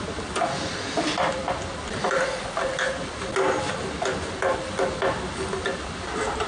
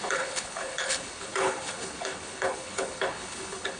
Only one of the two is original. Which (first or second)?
first